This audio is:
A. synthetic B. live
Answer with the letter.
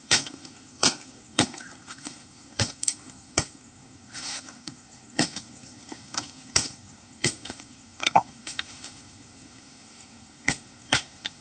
A